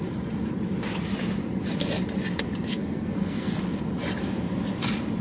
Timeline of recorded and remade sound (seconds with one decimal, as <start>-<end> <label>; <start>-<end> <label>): 0.0-2.7 recorded; 2.7-3.5 remade; 3.5-5.2 recorded